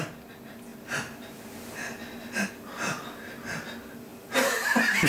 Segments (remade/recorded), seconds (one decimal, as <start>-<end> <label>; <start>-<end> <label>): 0.0-5.1 recorded